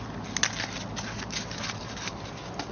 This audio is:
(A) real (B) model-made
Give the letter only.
A